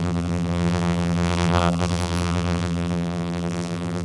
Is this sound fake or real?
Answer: fake